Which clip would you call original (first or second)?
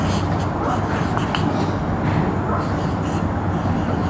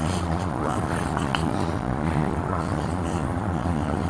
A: first